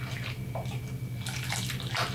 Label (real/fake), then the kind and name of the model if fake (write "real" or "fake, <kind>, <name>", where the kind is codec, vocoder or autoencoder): real